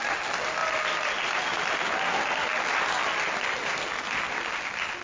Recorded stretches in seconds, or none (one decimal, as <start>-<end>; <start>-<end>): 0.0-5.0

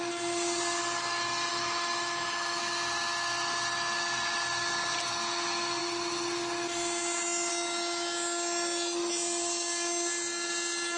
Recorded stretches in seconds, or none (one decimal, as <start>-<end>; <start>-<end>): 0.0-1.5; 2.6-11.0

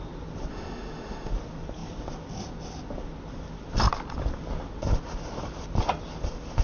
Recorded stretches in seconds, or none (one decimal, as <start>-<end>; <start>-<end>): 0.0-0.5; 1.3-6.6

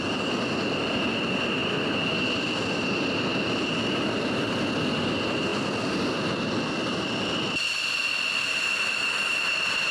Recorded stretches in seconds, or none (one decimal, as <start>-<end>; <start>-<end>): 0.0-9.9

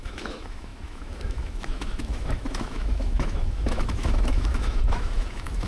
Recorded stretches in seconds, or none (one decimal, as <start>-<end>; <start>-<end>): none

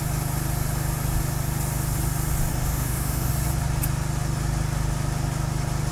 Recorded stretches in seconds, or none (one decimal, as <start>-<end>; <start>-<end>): 0.0-2.5; 3.3-5.9

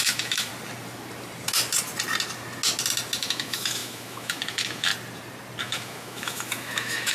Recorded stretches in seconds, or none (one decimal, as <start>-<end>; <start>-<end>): 0.5-3.2; 4.9-5.6

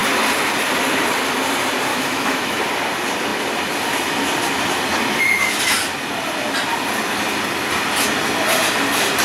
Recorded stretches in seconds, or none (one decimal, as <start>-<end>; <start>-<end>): 0.0-1.9; 2.6-9.2